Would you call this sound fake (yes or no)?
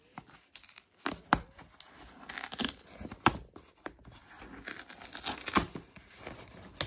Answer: no